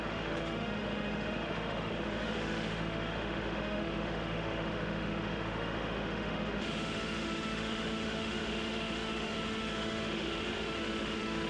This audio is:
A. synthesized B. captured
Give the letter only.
A